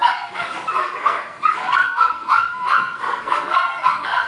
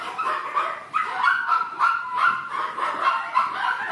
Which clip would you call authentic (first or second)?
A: second